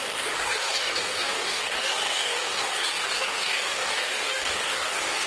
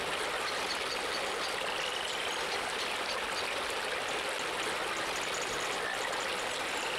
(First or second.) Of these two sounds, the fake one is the first